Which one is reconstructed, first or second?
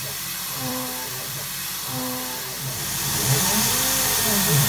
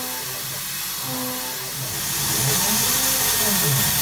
first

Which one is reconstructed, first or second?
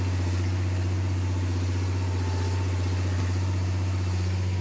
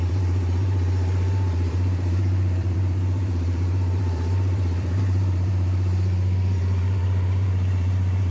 second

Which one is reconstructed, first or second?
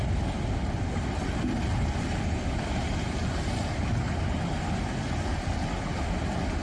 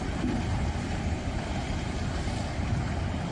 second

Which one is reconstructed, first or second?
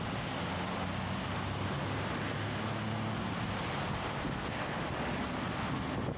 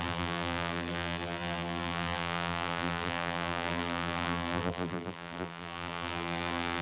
second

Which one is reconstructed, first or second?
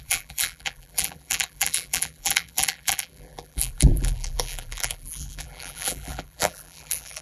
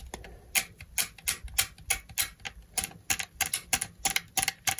first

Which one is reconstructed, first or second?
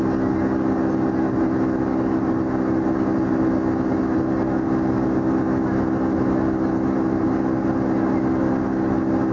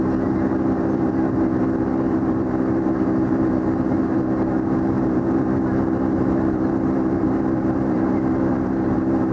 second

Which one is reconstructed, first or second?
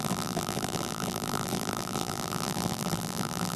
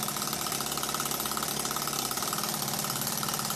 first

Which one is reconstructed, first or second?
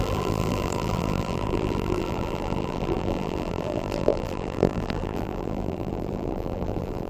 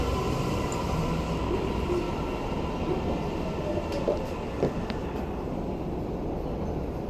first